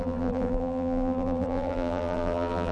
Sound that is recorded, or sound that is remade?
remade